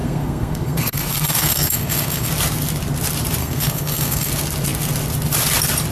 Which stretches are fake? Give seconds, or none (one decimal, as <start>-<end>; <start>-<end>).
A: 0.0-2.3; 3.4-4.3